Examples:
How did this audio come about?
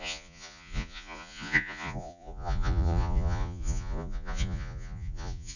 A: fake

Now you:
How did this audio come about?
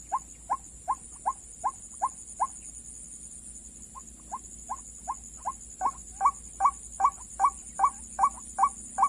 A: real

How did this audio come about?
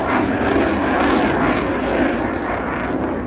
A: real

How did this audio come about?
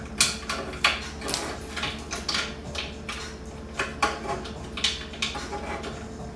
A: real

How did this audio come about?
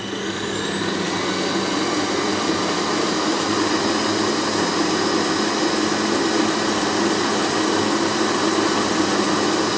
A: real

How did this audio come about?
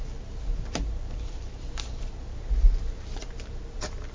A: real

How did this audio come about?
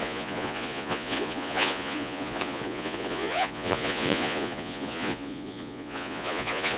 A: fake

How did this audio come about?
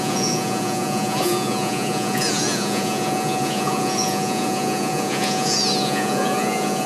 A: fake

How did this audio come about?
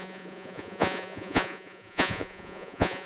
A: fake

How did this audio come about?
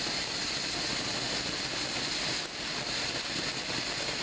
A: real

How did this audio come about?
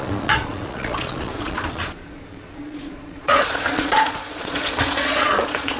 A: fake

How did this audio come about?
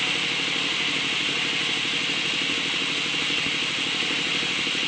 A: real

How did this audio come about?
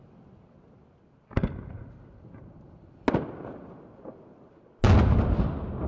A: real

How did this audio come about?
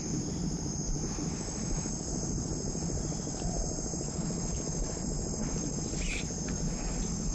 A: real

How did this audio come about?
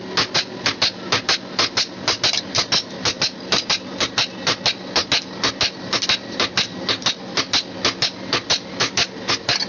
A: real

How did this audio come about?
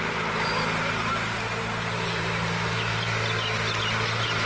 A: real